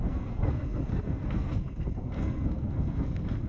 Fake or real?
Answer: fake